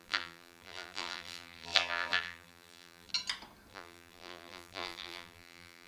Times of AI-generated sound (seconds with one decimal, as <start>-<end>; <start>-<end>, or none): 0.0-3.1; 3.7-5.9